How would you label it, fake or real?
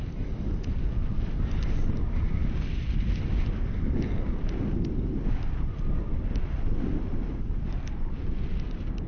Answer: real